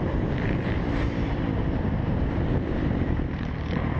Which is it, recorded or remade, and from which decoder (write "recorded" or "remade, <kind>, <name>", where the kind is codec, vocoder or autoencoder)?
remade, vocoder, BigVGAN v2